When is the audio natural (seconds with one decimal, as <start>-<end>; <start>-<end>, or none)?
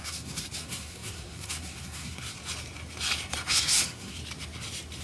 2.4-3.5; 4.2-5.0